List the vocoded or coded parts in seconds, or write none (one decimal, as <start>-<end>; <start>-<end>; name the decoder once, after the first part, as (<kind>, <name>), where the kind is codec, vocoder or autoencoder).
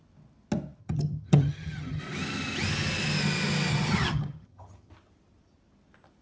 0.8-2.0 (vocoder, HiFi-GAN); 3.7-4.9